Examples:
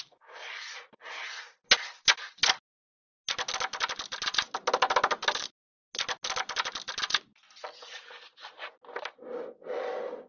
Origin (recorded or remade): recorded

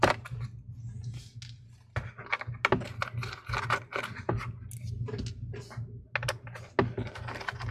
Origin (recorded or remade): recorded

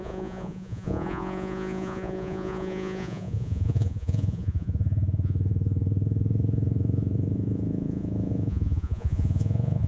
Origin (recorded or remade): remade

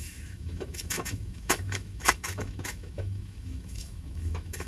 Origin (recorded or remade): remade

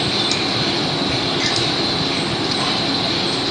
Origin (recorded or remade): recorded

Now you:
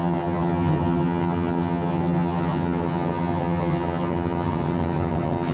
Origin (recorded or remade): remade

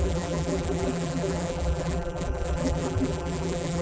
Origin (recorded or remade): remade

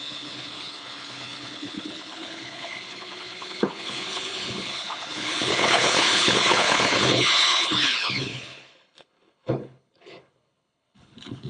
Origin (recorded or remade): remade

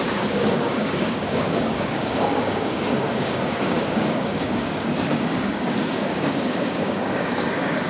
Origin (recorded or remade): remade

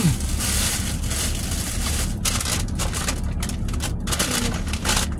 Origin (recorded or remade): recorded